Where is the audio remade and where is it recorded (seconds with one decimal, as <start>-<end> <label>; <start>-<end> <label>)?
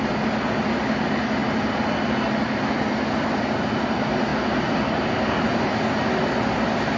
0.0-7.0 recorded